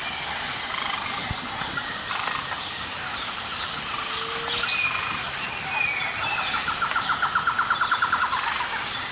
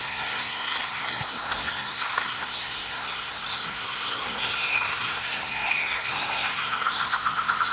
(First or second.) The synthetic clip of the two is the second